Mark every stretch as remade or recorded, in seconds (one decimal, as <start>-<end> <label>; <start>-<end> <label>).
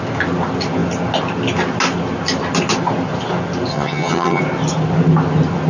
0.0-3.7 recorded; 3.7-4.4 remade; 4.4-5.7 recorded